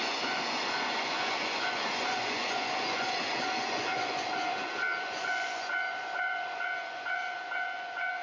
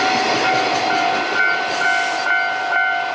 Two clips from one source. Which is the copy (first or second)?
first